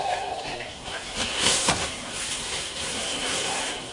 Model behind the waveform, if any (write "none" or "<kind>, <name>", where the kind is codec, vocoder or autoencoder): codec, SNAC